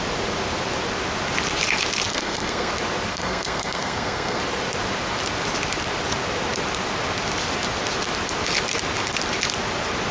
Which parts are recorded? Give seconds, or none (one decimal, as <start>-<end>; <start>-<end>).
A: 0.0-2.1; 2.7-3.1; 4.4-10.1